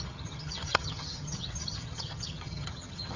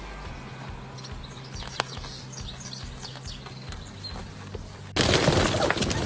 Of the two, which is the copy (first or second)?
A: first